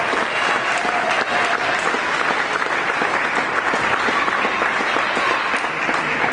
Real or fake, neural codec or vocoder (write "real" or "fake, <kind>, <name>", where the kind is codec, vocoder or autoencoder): real